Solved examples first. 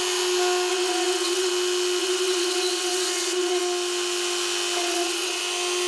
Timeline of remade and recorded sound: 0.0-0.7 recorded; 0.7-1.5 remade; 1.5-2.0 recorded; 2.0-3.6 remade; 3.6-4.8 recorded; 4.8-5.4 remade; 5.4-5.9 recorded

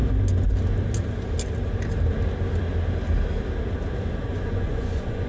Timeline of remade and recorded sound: 0.0-4.3 recorded; 4.3-5.3 remade

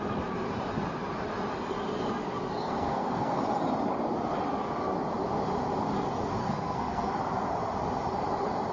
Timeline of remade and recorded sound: 0.0-2.6 recorded; 2.6-3.4 remade; 3.4-6.4 recorded; 6.4-7.1 remade; 7.1-8.7 recorded

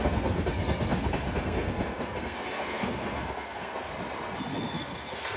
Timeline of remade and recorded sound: 0.0-3.9 remade; 3.9-4.5 recorded; 4.5-5.4 remade